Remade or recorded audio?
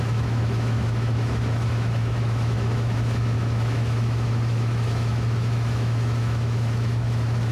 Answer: remade